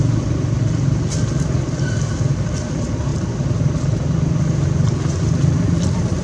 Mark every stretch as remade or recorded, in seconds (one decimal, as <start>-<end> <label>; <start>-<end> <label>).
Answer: 0.0-6.2 recorded